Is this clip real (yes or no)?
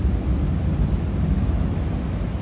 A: yes